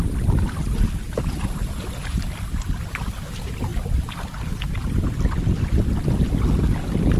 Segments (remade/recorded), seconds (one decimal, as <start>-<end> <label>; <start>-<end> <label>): 0.0-7.2 recorded